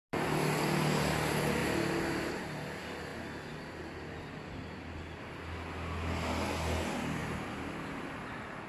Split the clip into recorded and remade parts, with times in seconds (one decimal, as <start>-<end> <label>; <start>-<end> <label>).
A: 0.0-8.7 recorded